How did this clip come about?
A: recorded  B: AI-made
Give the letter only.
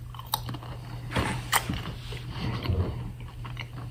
A